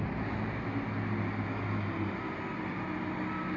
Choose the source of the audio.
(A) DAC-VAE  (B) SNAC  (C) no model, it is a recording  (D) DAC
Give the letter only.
C